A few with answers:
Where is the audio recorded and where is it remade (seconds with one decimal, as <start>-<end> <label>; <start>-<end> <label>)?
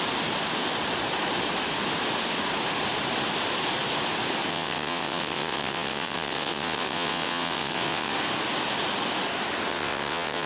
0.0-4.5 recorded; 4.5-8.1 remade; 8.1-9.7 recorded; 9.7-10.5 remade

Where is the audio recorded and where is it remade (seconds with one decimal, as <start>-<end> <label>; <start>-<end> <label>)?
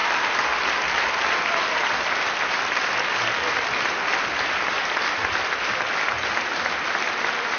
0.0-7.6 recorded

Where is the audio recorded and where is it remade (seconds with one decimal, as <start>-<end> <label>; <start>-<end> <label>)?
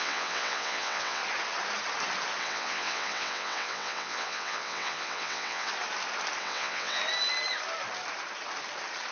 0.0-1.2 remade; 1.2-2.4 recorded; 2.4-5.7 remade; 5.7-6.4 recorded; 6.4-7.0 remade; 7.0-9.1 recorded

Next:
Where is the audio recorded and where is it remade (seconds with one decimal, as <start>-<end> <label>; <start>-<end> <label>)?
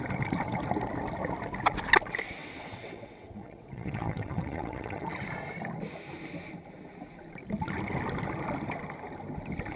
0.0-2.4 recorded; 2.4-5.1 remade; 5.1-9.8 recorded